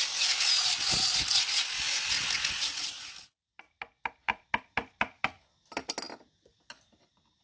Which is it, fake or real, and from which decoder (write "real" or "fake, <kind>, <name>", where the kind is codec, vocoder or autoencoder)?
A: real